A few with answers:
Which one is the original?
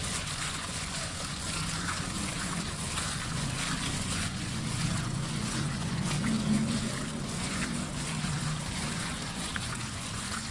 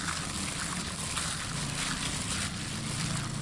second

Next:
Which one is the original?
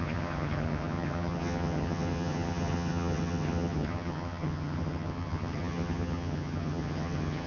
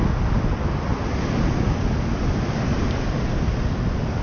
second